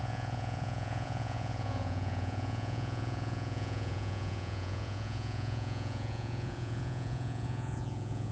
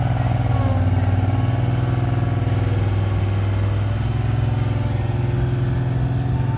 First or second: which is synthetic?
first